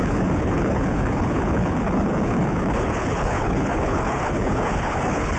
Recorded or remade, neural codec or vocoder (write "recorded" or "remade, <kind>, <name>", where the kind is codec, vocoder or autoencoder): remade, codec, HILCodec